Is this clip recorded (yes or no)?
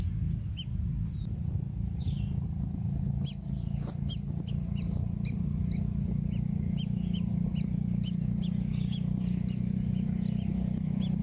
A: yes